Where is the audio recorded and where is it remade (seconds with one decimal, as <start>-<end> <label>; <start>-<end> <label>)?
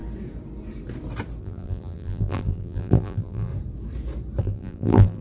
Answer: 0.0-1.4 recorded; 1.4-3.5 remade; 3.5-4.4 recorded; 4.4-5.2 remade